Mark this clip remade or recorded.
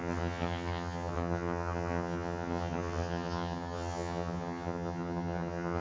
remade